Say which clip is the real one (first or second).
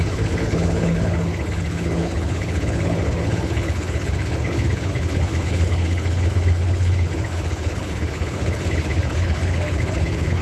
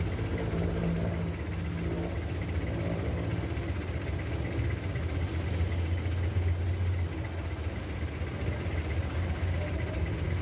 second